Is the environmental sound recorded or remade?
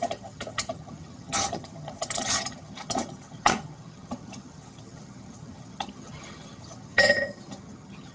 remade